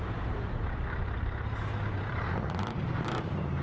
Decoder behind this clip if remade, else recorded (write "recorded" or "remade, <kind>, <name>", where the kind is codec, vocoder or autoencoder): remade, vocoder, BigVGAN v2